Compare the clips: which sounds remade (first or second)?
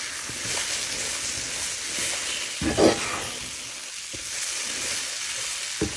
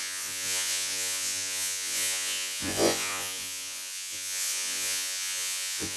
second